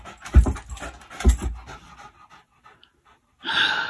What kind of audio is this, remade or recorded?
recorded